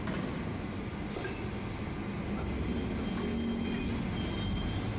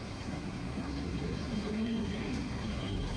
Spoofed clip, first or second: second